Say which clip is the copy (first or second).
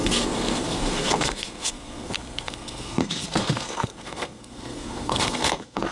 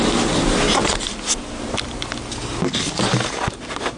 first